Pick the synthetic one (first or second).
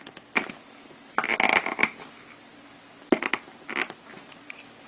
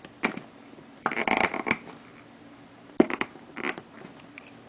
second